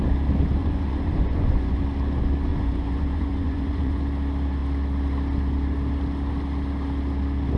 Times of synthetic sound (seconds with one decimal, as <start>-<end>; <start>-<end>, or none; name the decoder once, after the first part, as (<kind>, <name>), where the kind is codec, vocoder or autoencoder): 0.6-1.8 (vocoder, Vocos); 2.5-4.0